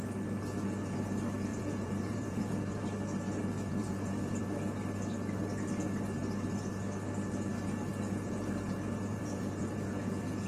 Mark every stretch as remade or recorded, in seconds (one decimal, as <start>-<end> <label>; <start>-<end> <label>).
0.0-1.5 recorded; 1.5-2.8 remade; 2.8-3.7 recorded; 3.7-4.4 remade; 4.4-7.9 recorded; 7.9-10.5 remade